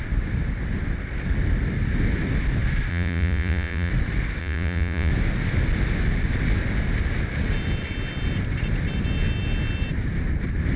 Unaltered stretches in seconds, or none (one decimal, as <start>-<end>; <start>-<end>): 0.0-2.9; 3.9-4.4; 5.1-10.8